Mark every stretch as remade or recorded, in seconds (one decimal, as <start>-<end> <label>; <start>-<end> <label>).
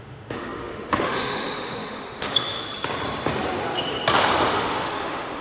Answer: 0.0-2.6 remade; 2.6-4.5 recorded; 4.5-5.4 remade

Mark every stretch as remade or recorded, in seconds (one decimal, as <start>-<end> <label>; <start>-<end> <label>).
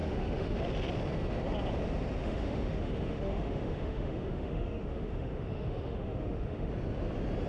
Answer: 0.0-0.6 remade; 0.6-2.2 recorded; 2.2-6.7 remade; 6.7-7.5 recorded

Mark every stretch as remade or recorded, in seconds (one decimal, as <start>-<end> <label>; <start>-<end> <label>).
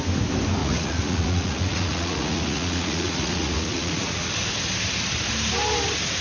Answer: 0.0-0.6 recorded; 0.6-4.3 remade; 4.3-6.2 recorded